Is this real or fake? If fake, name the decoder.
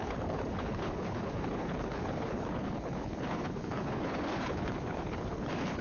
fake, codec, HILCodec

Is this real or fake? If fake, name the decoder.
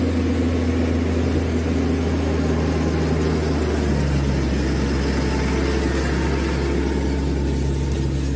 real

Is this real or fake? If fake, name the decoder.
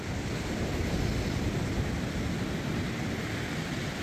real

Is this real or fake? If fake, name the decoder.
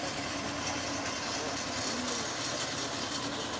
real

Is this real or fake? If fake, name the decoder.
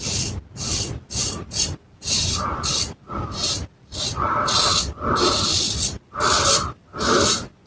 real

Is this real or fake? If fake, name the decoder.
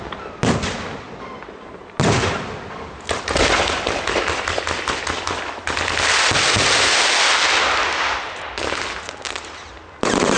real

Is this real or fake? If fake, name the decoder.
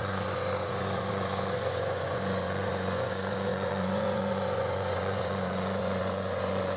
fake, vocoder, Vocos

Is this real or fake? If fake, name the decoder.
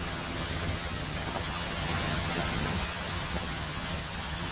fake, vocoder, HiFi-GAN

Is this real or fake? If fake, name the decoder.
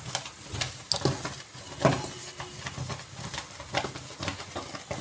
real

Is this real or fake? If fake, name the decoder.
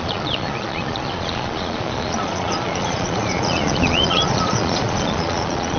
fake, vocoder, Vocos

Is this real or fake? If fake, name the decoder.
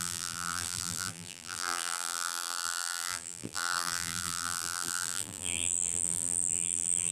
fake, vocoder, BigVGAN v2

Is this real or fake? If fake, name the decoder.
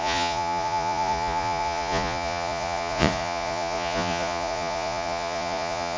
fake, vocoder, Vocos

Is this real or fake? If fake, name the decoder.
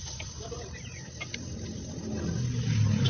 real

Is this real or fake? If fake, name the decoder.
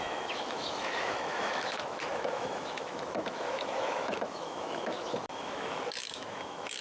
fake, autoencoder, DAC-VAE